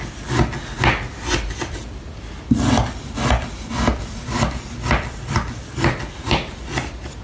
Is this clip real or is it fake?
real